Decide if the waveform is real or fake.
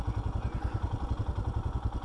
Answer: real